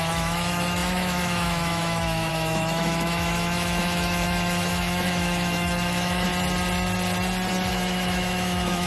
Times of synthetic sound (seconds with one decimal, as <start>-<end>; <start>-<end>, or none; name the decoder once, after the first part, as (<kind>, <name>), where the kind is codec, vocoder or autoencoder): 0.0-6.3 (autoencoder, DAC-VAE); 7.7-8.9